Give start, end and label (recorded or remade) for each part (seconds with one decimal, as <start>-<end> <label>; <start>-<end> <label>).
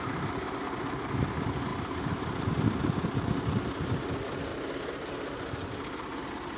0.0-6.6 recorded